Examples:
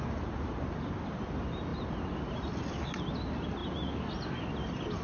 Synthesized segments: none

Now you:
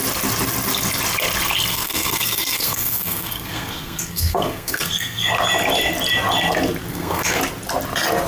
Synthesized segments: 1.7-5.3 (codec, SNAC); 6.9-7.4

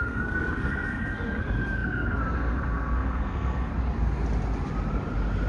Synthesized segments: 0.0-3.7 (codec, SNAC)

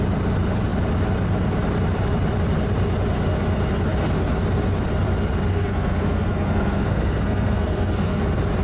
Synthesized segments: 5.5-8.2 (codec, SNAC)

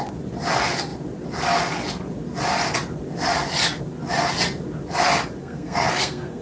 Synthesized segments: 5.4-6.4 (codec, SNAC)

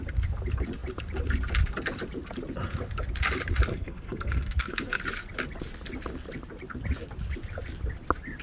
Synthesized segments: 3.7-5.0 (codec, SNAC)

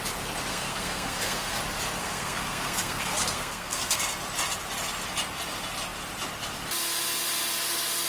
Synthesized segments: 0.5-1.6 (codec, SNAC); 2.0-4.0